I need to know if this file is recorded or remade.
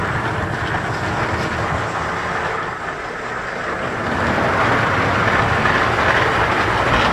recorded